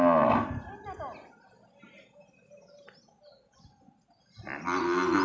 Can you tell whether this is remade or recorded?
recorded